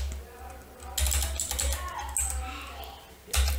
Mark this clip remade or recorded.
recorded